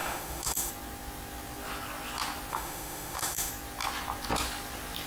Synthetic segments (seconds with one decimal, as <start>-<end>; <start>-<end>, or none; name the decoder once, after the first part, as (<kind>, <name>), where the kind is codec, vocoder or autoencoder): 0.0-0.7 (autoencoder, DAC-VAE); 2.5-3.5